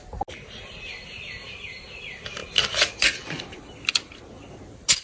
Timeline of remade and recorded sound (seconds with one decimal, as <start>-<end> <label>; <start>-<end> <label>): 0.0-5.0 recorded